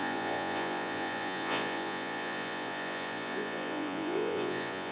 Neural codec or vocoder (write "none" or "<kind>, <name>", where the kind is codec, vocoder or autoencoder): vocoder, Vocos